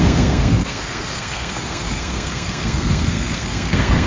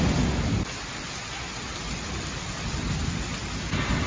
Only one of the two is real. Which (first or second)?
second